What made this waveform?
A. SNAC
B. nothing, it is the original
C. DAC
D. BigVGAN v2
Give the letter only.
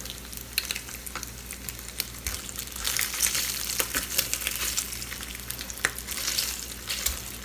B